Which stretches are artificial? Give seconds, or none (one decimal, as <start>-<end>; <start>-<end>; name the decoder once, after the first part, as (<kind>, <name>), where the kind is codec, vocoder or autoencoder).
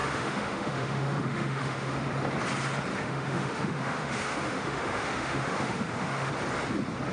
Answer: 0.0-2.1 (autoencoder, DAC-VAE); 2.9-6.3